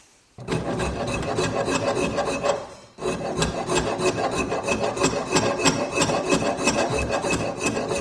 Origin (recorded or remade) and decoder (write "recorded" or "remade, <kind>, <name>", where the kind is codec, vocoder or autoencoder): recorded